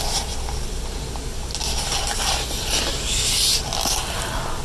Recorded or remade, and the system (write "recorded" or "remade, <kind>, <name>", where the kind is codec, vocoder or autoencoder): recorded